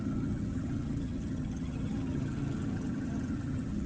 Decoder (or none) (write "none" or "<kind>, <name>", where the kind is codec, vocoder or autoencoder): vocoder, HiFi-GAN